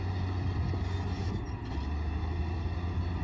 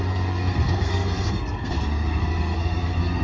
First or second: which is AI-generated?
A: second